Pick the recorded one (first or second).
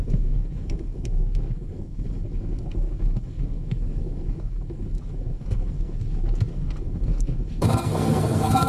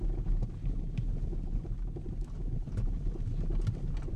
second